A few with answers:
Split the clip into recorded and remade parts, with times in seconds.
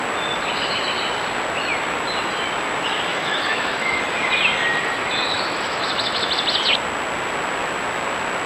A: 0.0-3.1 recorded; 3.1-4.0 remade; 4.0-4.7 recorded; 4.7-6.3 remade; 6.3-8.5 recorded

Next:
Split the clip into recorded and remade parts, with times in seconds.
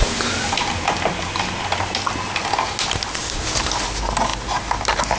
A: 0.0-5.2 recorded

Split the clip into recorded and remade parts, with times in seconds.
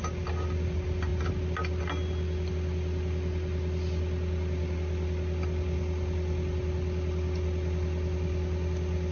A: 0.0-9.1 recorded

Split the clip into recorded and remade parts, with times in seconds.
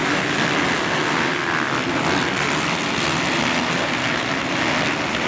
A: 0.0-5.3 recorded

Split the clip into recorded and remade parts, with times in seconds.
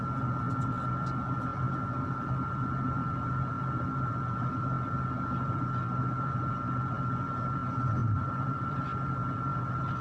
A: 0.0-1.5 recorded; 1.5-4.5 remade; 4.5-8.2 recorded; 8.2-10.0 remade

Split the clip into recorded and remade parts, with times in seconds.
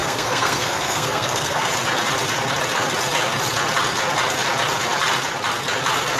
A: 0.0-1.7 remade; 1.7-6.2 recorded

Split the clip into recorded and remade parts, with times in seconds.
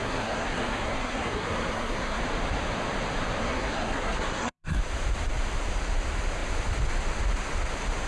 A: 0.0-2.2 remade; 2.2-3.4 recorded; 3.4-4.8 remade; 4.8-8.1 recorded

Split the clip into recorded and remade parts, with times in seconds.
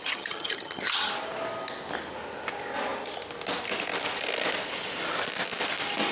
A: 0.0-1.1 remade; 1.1-6.1 recorded